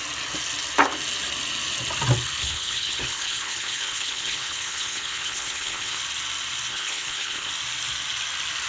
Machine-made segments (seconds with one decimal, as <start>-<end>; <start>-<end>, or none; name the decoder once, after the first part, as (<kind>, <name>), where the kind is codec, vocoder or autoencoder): 2.4-6.0 (codec, HILCodec); 6.7-7.5